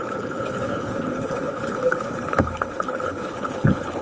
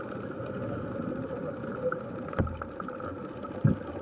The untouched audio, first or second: second